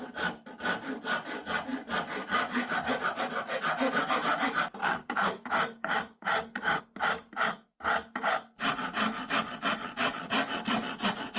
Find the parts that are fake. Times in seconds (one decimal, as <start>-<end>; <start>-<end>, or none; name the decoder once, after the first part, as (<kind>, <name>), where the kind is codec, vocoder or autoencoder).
4.8-6.8 (codec, DAC)